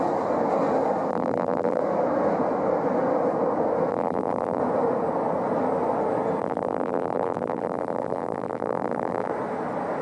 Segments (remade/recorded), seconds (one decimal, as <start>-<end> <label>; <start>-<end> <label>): 0.0-1.1 recorded; 1.1-1.8 remade; 1.8-3.9 recorded; 3.9-4.6 remade; 4.6-6.4 recorded; 6.4-9.3 remade; 9.3-10.0 recorded